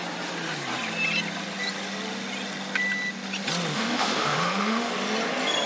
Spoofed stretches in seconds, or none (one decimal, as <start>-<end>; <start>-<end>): 3.7-4.9